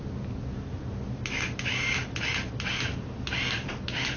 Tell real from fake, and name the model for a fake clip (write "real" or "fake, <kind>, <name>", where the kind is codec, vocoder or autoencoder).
real